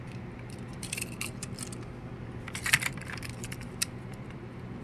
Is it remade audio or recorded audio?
remade